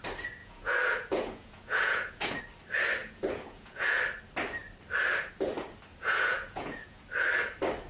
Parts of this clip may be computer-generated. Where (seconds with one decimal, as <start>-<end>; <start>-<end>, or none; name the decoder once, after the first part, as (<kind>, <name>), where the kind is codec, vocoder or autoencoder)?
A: 0.4-2.4 (vocoder, Vocos); 3.0-4.0; 5.9-7.0